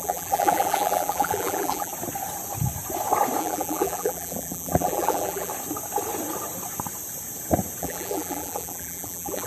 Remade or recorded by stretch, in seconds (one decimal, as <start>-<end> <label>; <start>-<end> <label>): 0.0-1.9 remade; 1.9-3.4 recorded; 3.4-5.5 remade; 5.5-7.8 recorded; 7.8-9.5 remade

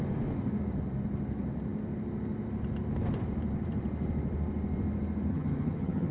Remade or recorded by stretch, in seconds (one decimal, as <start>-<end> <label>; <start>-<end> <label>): 0.0-5.3 recorded; 5.3-6.1 remade

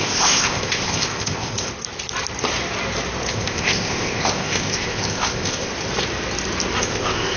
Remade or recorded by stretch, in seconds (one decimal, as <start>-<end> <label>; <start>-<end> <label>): 0.0-1.7 remade; 1.7-3.3 recorded; 3.3-5.7 remade; 5.7-6.8 recorded; 6.8-7.4 remade

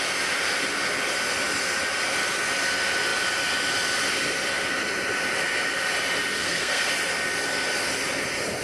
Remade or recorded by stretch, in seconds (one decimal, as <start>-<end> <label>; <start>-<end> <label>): 0.0-6.4 recorded; 6.4-6.9 remade; 6.9-8.6 recorded

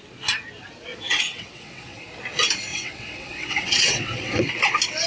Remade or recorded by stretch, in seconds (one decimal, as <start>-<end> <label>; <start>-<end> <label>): 0.0-0.9 recorded; 0.9-2.0 remade; 2.0-2.7 recorded; 2.7-4.4 remade; 4.4-5.1 recorded